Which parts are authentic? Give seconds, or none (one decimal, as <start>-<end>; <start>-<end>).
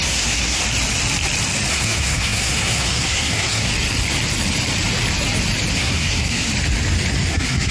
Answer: 0.6-1.7; 3.7-5.7; 6.5-7.3